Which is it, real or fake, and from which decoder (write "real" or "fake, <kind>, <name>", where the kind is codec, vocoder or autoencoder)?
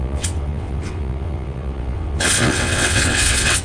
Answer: fake, vocoder, WaveNeXt